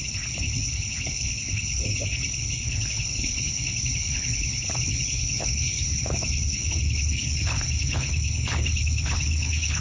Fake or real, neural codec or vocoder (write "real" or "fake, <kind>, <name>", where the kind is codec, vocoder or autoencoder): fake, codec, HILCodec